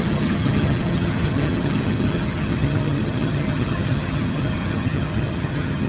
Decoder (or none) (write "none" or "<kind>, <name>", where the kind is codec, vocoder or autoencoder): vocoder, HiFi-GAN